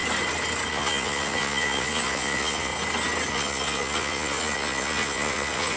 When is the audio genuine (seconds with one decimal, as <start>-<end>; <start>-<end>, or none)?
0.0-0.7; 2.7-3.3